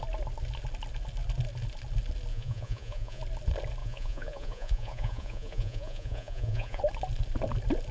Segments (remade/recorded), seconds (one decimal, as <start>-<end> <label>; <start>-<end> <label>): 0.0-2.3 recorded; 2.3-3.2 remade; 3.2-3.8 recorded; 3.8-6.8 remade; 6.8-7.9 recorded